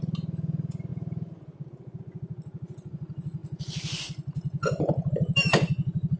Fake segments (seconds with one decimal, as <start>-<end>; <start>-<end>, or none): none